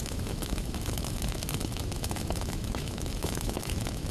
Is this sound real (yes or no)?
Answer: no